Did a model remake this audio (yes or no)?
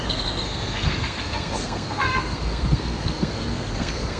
yes